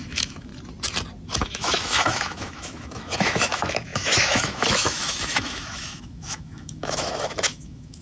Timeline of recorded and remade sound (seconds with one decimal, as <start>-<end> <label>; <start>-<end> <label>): 0.0-0.5 remade; 0.5-1.4 recorded; 1.4-8.0 remade